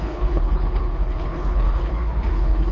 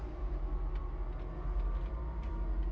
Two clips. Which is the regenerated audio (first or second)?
first